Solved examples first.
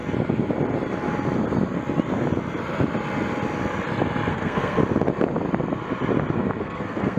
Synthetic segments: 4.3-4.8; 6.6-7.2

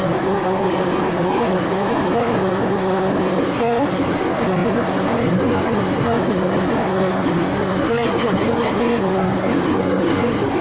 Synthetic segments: 0.0-10.6

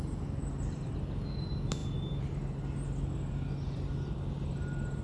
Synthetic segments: none

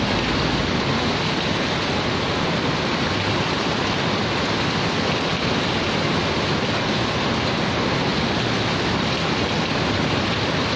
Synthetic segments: none

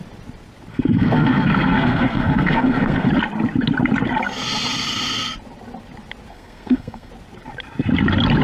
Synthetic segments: 0.7-3.1; 6.3-7.1

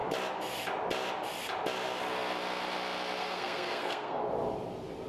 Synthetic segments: 3.2-4.2

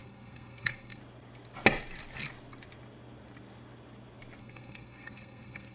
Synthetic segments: 0.0-1.0; 4.4-5.7

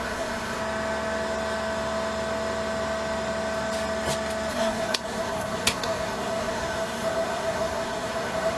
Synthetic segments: 0.0-0.6; 4.5-8.6